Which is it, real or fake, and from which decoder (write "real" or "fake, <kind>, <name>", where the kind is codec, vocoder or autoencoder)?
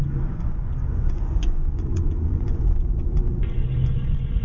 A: fake, vocoder, Vocos